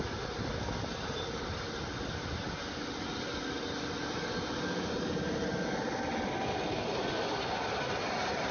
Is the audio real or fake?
real